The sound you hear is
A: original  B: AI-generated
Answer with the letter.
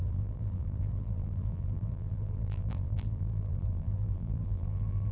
B